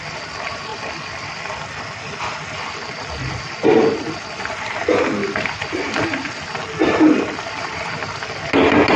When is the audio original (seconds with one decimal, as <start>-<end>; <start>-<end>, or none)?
0.0-0.7; 1.3-9.0